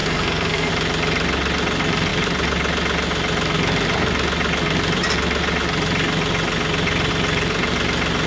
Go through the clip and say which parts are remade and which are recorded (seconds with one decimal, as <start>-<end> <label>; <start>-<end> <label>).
0.0-0.7 remade; 0.7-8.3 recorded